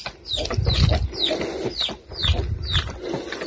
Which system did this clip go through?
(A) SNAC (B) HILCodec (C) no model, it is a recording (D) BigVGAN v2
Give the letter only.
C